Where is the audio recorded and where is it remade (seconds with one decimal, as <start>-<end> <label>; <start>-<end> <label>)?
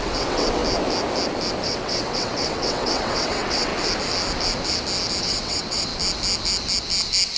0.0-0.6 remade; 0.6-1.6 recorded; 1.6-3.7 remade; 3.7-5.2 recorded; 5.2-5.9 remade; 5.9-7.4 recorded